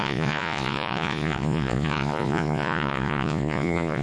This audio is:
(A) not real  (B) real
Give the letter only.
A